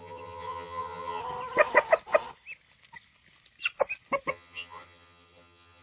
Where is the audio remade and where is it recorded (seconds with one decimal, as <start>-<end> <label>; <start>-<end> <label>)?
0.0-1.2 remade; 1.2-4.3 recorded; 4.3-5.8 remade